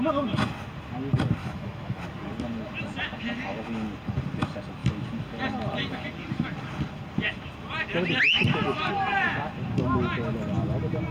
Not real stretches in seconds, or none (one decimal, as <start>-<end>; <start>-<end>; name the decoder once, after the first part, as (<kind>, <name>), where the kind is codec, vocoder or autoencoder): 1.4-2.0 (autoencoder, DAC-VAE)